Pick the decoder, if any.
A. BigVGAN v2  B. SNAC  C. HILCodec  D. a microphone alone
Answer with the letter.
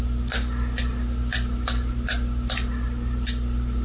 D